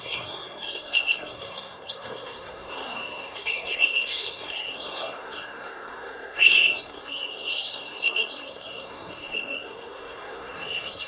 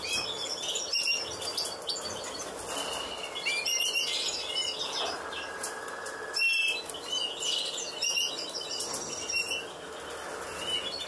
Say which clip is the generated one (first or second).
first